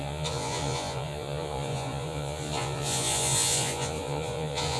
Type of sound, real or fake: fake